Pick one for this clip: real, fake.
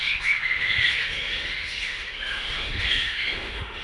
fake